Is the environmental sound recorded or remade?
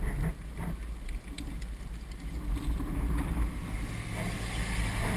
recorded